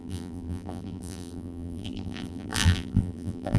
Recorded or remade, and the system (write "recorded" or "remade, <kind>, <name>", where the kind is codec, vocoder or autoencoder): remade, vocoder, BigVGAN v2